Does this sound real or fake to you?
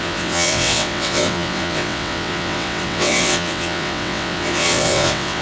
fake